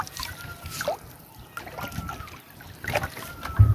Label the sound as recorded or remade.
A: recorded